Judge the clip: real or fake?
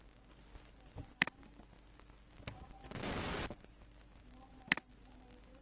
real